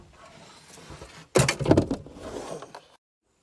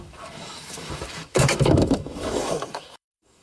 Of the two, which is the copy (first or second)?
second